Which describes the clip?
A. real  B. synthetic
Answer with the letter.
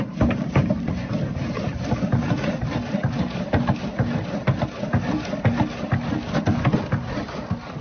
A